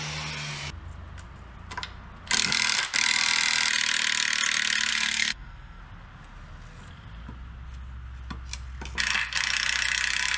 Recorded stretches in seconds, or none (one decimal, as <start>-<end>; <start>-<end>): 0.0-4.9; 5.8-10.4

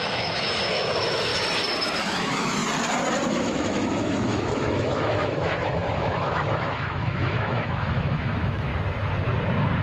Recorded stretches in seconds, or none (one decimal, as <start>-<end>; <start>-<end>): 1.3-2.0; 2.6-3.3; 8.7-9.8